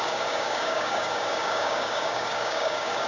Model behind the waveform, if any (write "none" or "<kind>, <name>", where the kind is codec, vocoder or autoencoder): codec, DAC